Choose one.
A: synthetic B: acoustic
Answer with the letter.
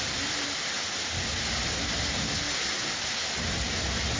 B